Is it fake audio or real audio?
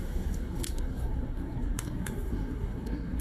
fake